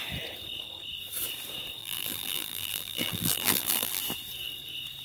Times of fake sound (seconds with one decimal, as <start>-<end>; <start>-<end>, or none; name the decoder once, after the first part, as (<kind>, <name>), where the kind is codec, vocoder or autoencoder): 1.8-4.0 (vocoder, BigVGAN v2)